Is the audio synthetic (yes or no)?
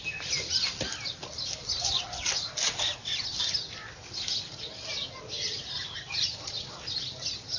no